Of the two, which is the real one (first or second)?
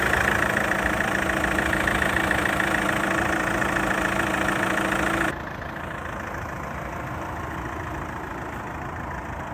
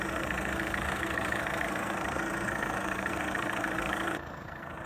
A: first